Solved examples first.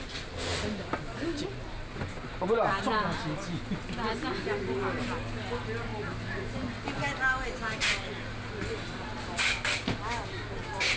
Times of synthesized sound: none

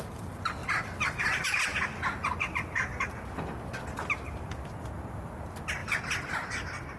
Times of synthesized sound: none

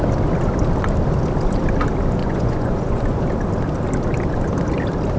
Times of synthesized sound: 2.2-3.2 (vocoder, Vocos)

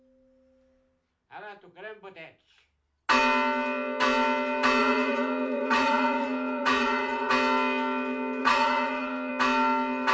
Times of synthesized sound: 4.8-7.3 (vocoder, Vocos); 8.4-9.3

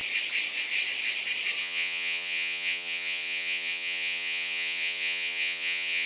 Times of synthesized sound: 1.6-6.1 (vocoder, Vocos)

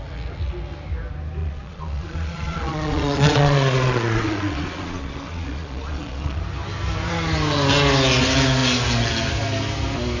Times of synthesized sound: 1.4-6.4 (vocoder, Vocos)